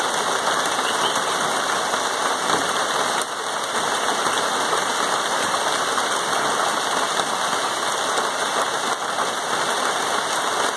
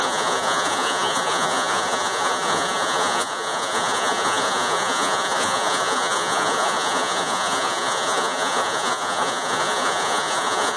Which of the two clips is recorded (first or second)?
first